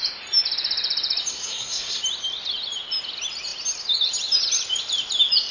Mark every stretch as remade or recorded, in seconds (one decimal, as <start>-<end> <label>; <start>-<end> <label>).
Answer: 0.0-1.3 recorded; 1.3-2.0 remade; 2.0-5.5 recorded